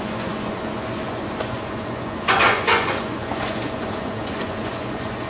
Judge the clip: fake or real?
fake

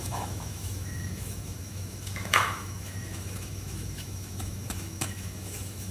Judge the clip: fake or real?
fake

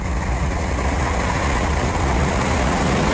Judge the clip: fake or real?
fake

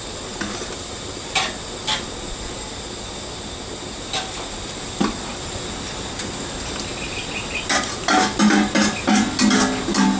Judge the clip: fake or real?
real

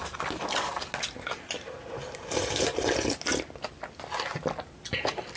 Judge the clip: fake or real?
real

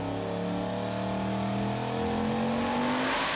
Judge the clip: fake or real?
real